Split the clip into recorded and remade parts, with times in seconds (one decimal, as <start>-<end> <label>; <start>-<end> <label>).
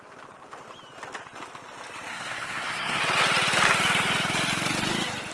0.0-2.1 recorded; 2.1-3.0 remade; 3.0-5.3 recorded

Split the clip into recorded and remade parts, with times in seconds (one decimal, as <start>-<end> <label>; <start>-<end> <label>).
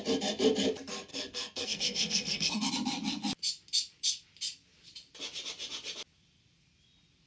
0.0-1.1 recorded; 1.1-2.7 remade; 2.7-7.3 recorded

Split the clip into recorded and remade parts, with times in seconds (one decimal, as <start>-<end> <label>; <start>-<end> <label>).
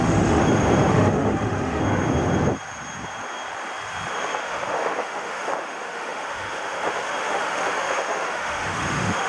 0.0-0.4 remade; 0.4-0.9 recorded; 0.9-1.8 remade; 1.8-4.1 recorded; 4.1-9.3 remade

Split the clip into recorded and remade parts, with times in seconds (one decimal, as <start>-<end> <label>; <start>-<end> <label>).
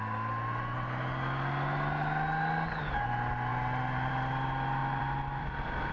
0.0-3.5 recorded; 3.5-4.1 remade; 4.1-4.8 recorded; 4.8-5.9 remade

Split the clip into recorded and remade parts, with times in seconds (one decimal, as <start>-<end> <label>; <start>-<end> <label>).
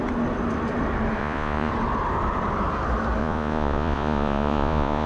0.0-1.2 recorded; 1.2-1.7 remade; 1.7-3.2 recorded; 3.2-5.1 remade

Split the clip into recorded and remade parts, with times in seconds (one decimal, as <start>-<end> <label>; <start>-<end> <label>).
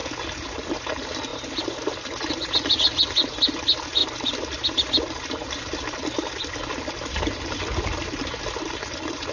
0.0-9.3 recorded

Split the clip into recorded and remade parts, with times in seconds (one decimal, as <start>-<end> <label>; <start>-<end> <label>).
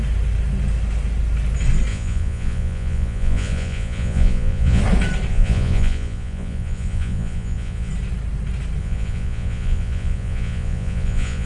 0.0-1.9 recorded; 1.9-4.8 remade; 4.8-5.3 recorded; 5.3-7.9 remade; 7.9-8.8 recorded; 8.8-11.5 remade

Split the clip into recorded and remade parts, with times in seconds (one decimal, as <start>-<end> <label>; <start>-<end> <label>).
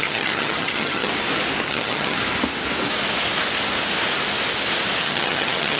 0.0-1.1 remade; 1.1-1.7 recorded; 1.7-2.2 remade; 2.2-5.0 recorded; 5.0-5.8 remade